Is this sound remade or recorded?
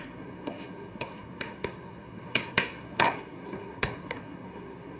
remade